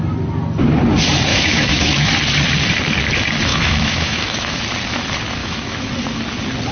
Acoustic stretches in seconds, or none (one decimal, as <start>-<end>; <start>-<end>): 0.0-1.3; 2.1-3.5; 4.6-5.4; 5.9-6.7